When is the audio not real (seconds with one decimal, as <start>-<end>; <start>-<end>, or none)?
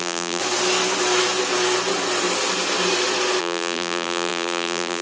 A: 0.0-0.4; 3.4-5.0